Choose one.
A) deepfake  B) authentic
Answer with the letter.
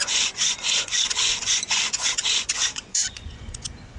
A